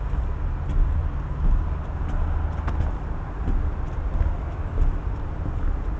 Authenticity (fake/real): real